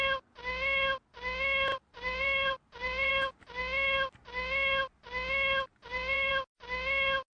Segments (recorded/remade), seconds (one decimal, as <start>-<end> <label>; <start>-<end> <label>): 0.0-1.7 recorded; 1.7-3.1 remade; 3.1-5.8 recorded; 5.8-6.3 remade; 6.3-7.3 recorded